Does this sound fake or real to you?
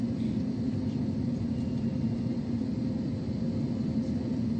real